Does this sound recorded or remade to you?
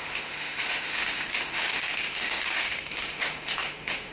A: remade